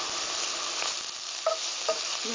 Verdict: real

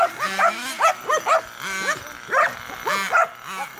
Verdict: real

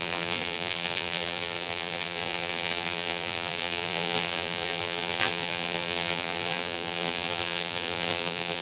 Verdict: fake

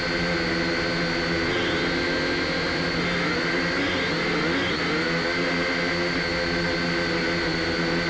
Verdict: real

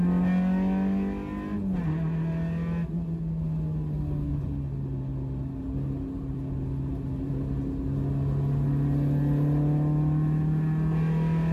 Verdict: real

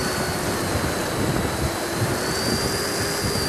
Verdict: real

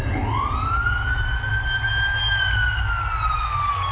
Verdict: real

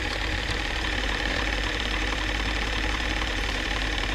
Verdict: fake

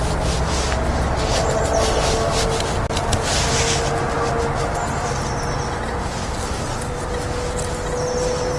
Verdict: real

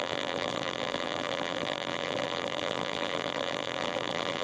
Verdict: fake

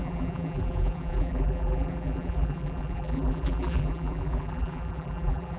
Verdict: fake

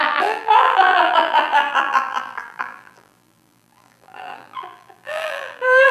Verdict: fake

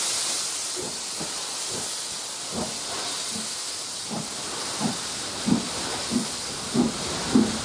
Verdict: real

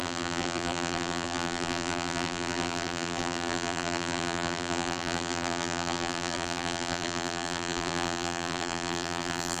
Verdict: fake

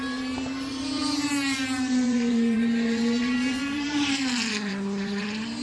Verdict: fake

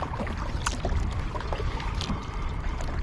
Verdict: real